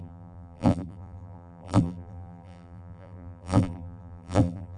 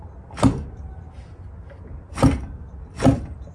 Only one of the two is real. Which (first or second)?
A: second